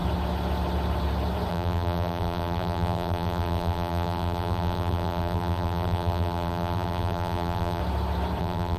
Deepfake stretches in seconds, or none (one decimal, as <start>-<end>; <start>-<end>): 1.5-7.8; 8.4-8.8